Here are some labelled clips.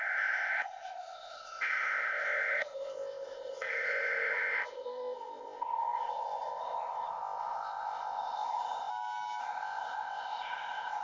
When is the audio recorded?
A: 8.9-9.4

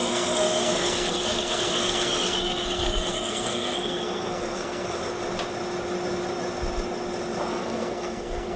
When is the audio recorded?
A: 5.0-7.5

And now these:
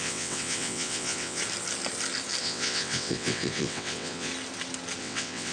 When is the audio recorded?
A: 1.4-2.4; 4.3-5.0

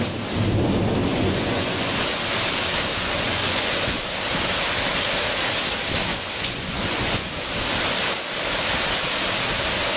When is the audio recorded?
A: 0.0-1.1; 2.1-2.9; 4.0-6.1; 7.5-10.0

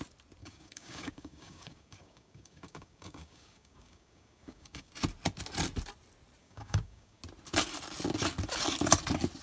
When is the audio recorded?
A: 0.0-0.4; 4.9-6.4; 7.2-9.4